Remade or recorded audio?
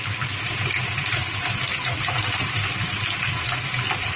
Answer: recorded